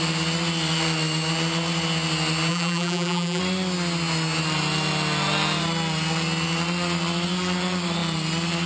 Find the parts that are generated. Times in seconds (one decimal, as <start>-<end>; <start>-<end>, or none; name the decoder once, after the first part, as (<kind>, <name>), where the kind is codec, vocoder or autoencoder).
2.5-3.4 (vocoder, BigVGAN v2)